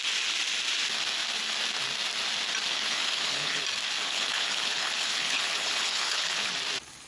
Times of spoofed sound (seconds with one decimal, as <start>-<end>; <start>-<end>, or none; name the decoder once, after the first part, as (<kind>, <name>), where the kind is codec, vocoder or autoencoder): 2.7-3.6 (codec, HILCodec); 4.0-6.5